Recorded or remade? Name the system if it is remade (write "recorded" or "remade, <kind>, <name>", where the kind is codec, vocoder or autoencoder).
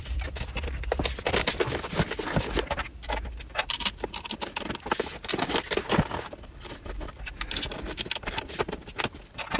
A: recorded